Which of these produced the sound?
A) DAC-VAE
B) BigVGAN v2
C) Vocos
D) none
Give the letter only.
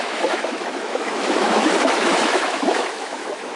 A